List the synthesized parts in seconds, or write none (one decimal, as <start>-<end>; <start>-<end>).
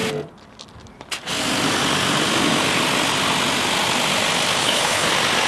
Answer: 4.6-5.1